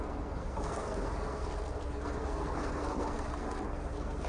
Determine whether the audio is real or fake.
fake